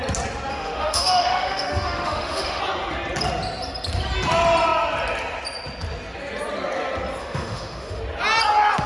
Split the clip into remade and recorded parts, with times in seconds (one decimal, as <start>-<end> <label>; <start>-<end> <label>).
0.0-0.5 recorded; 0.5-2.6 remade; 2.6-7.2 recorded; 7.2-8.0 remade; 8.0-8.9 recorded

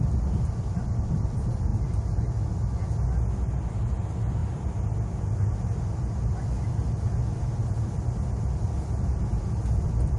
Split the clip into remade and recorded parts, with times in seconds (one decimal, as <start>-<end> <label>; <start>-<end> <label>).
0.0-10.2 recorded

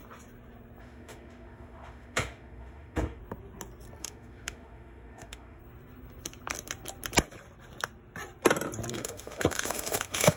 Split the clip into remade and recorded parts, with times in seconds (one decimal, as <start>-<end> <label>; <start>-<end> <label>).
0.0-0.8 recorded; 0.8-3.2 remade; 3.2-4.0 recorded; 4.0-5.6 remade; 5.6-8.9 recorded; 8.9-10.4 remade

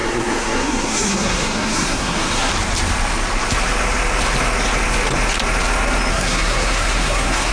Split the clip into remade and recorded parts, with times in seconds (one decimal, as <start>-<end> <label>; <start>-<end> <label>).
0.0-2.5 remade; 2.5-6.1 recorded; 6.1-7.5 remade